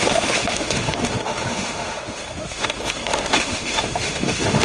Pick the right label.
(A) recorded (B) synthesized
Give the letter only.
B